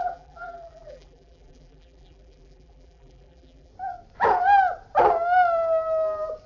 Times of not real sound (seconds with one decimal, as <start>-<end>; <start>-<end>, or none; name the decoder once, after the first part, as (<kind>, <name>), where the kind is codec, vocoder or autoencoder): 0.0-3.7 (vocoder, BigVGAN v2)